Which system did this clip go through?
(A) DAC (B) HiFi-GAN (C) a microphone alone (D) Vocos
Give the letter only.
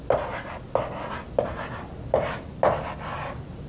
C